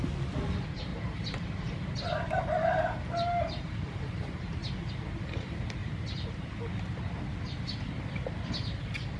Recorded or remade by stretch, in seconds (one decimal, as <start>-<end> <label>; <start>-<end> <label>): 0.0-0.9 recorded; 0.9-4.9 remade; 4.9-5.8 recorded; 5.8-6.4 remade; 6.4-9.2 recorded